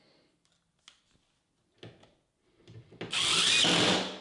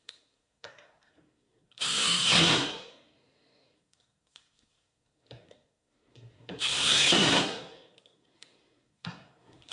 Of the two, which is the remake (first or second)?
second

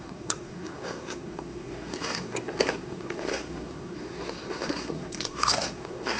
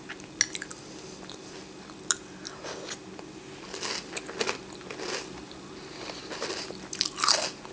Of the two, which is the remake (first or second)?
first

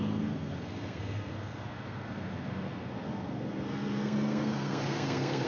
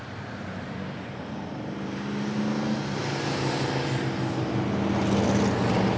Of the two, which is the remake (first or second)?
first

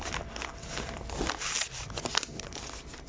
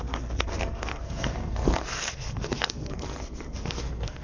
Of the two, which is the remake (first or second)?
second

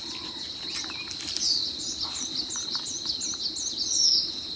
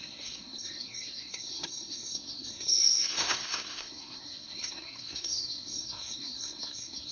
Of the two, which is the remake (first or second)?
second